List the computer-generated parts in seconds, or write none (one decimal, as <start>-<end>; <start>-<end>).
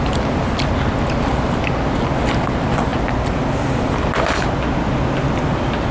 none